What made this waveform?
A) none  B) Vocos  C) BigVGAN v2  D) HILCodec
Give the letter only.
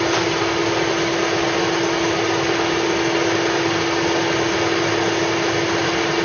A